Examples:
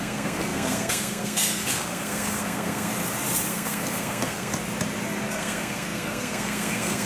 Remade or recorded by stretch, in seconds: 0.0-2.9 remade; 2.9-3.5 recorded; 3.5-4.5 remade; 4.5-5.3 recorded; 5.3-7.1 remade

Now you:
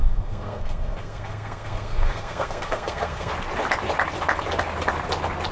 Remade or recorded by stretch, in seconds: 0.0-3.3 remade; 3.3-5.5 recorded

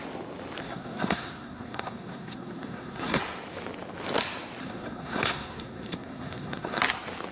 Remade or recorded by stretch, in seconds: 0.0-0.6 recorded; 0.6-3.2 remade; 3.2-4.6 recorded; 4.6-6.8 remade; 6.8-7.3 recorded

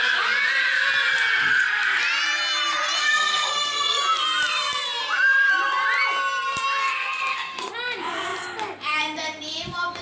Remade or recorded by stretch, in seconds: 0.0-1.4 recorded; 1.4-2.0 remade; 2.0-3.0 recorded; 3.0-4.0 remade; 4.0-6.8 recorded; 6.8-7.7 remade; 7.7-10.0 recorded